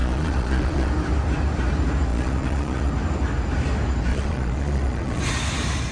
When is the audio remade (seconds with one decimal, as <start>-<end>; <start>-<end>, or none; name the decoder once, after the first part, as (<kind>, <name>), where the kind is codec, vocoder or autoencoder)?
0.0-0.9 (vocoder, Vocos); 2.1-2.9; 4.1-5.2